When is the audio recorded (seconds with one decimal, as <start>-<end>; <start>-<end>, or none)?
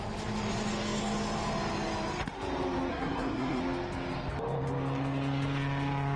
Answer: 0.0-2.9; 3.6-6.2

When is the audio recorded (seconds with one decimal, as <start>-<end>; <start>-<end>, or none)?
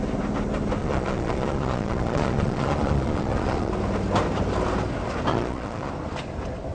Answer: 0.0-0.8; 3.7-5.3; 5.9-6.7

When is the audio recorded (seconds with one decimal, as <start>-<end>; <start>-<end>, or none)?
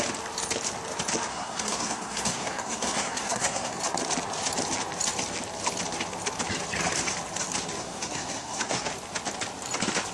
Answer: 0.0-1.3; 3.8-7.8; 8.9-10.1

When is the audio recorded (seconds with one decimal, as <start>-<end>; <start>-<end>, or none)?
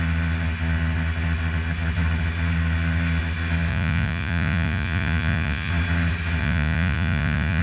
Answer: 0.0-3.7; 5.7-6.4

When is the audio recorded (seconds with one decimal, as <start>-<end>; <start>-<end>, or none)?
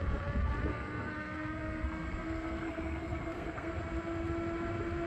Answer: 0.0-0.7; 3.8-5.1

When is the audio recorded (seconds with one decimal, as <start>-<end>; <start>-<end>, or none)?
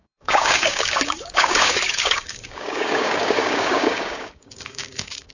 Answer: none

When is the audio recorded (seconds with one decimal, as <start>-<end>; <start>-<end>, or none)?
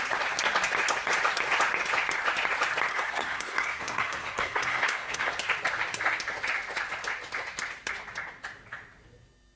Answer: 0.0-2.9; 5.3-9.6